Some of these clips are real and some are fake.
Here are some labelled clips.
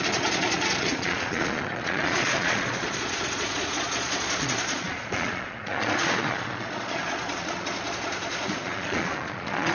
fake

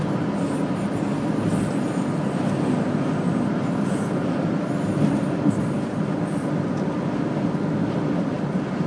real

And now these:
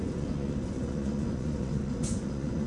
fake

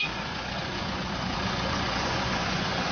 fake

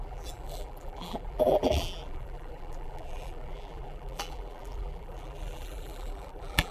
fake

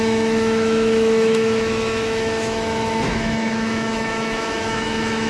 fake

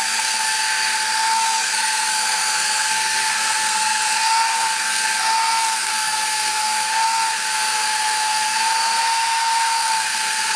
fake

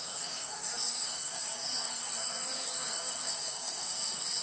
fake